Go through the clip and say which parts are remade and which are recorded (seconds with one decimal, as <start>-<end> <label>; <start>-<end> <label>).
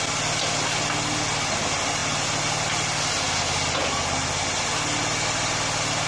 0.0-6.1 recorded